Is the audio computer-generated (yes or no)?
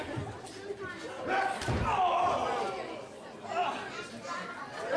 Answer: no